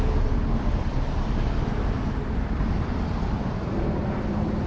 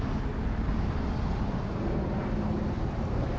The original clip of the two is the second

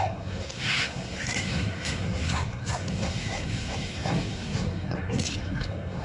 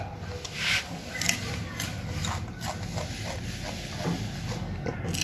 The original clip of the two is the second